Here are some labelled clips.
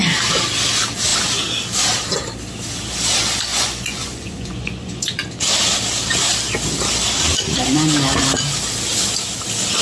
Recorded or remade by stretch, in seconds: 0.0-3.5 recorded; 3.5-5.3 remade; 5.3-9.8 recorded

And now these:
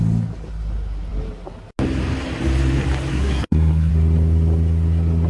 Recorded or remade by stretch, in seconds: 0.0-3.1 recorded; 3.1-3.9 remade; 3.9-5.3 recorded

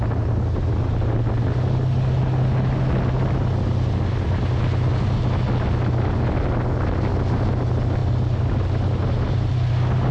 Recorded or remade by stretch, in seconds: 0.0-10.1 recorded